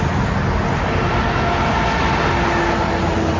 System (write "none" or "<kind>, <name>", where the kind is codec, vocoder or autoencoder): none